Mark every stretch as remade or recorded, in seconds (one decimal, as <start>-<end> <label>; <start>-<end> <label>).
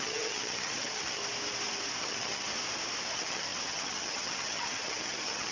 0.0-1.2 remade; 1.2-2.0 recorded; 2.0-2.5 remade; 2.5-3.1 recorded; 3.1-5.5 remade